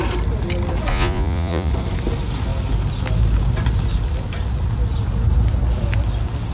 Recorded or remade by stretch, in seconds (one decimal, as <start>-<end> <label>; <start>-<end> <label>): 0.0-0.9 recorded; 0.9-1.7 remade; 1.7-6.5 recorded